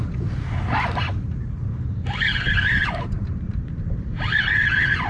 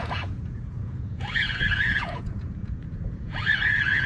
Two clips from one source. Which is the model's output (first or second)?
second